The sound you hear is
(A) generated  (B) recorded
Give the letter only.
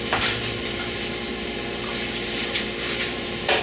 A